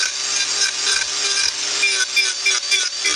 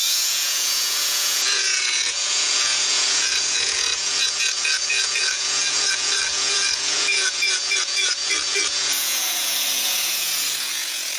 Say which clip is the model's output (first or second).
second